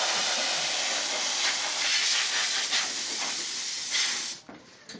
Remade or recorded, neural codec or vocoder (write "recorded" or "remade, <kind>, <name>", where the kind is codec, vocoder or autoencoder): remade, vocoder, BigVGAN v2